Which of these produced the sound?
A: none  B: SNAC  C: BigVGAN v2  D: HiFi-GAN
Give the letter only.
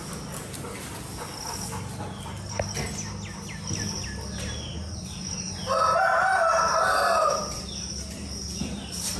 A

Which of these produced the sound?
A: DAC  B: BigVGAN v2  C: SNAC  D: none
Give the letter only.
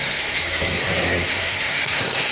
C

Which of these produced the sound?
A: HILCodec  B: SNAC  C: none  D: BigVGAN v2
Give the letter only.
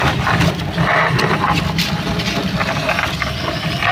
C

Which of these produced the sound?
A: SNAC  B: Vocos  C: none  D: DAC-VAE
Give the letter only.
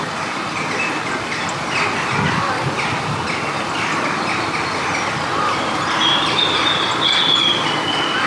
C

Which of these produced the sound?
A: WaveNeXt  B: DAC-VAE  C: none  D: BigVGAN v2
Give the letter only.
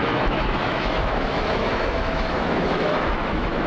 B